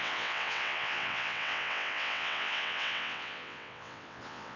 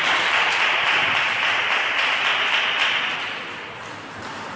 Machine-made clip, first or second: first